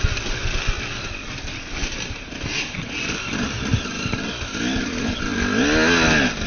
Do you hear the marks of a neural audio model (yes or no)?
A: no